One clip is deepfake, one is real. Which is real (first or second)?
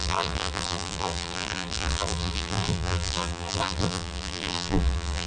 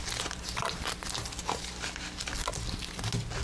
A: second